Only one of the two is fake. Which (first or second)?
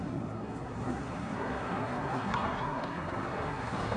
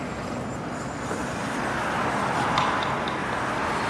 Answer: first